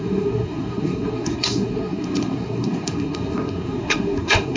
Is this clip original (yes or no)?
no